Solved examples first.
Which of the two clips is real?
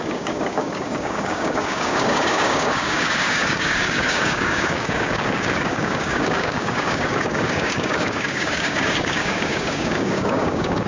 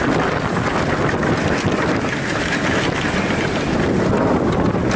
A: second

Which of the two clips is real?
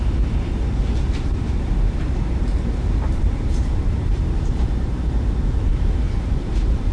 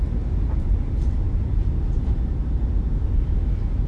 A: second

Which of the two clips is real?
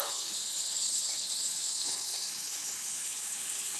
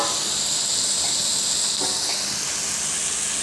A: second